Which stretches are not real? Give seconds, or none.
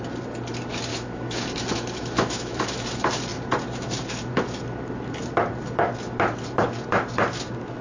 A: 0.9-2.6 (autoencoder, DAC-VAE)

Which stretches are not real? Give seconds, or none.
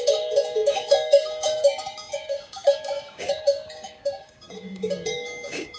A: 0.0-5.8 (codec, DAC)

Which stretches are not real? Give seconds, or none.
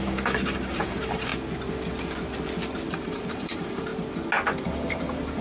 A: 0.0-1.3 (vocoder, BigVGAN v2); 3.0-3.9; 4.6-5.4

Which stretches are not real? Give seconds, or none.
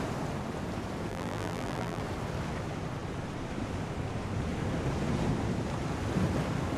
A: 1.1-2.0 (vocoder, BigVGAN v2)